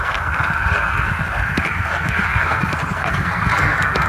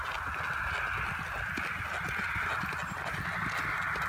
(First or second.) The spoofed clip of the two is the first